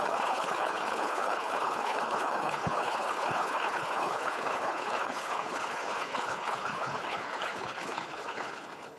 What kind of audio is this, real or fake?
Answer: fake